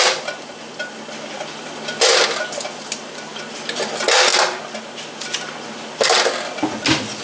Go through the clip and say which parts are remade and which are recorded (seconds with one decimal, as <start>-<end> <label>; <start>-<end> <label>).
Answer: 0.0-7.2 recorded